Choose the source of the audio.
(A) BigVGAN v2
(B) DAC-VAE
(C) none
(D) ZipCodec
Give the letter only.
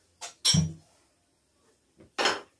C